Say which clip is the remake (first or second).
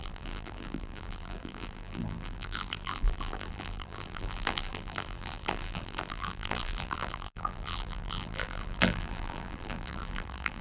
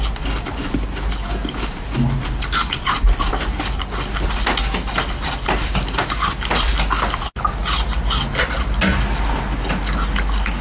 first